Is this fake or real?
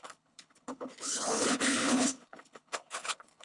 fake